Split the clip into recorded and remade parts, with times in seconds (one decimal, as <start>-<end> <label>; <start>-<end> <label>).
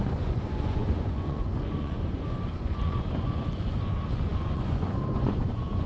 0.0-5.9 remade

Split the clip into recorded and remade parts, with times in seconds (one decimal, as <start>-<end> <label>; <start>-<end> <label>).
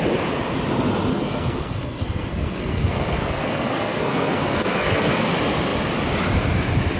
0.0-1.1 recorded; 1.1-5.3 remade; 5.3-7.0 recorded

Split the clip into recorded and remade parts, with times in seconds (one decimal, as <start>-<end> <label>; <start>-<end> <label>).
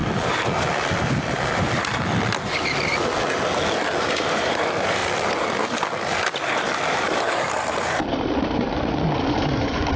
0.0-4.2 recorded; 4.2-5.0 remade; 5.0-6.9 recorded; 6.9-10.0 remade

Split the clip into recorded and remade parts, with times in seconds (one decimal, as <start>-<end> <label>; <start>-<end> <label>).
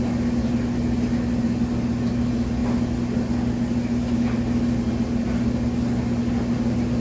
0.0-7.0 recorded